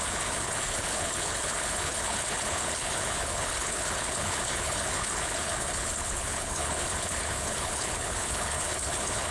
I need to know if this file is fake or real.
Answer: fake